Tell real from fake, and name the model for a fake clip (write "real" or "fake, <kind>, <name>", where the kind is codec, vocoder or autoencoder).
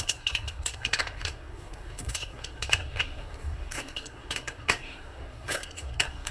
fake, codec, SNAC